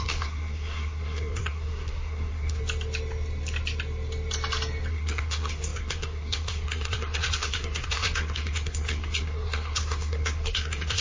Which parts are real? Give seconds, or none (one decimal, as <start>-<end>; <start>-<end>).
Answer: 2.6-4.9